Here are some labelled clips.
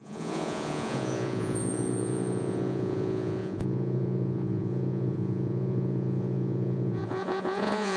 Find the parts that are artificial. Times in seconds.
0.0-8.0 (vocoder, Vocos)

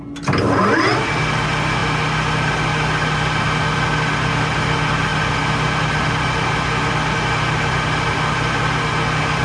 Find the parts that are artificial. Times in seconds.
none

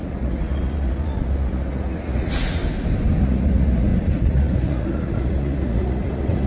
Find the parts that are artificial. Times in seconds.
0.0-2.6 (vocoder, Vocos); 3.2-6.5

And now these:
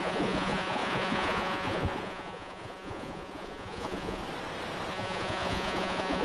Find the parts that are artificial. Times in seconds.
0.0-4.2 (vocoder, Vocos); 4.9-6.2

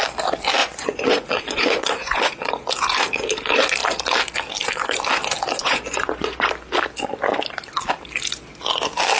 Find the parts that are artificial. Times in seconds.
0.6-2.5 (vocoder, Vocos); 5.6-6.5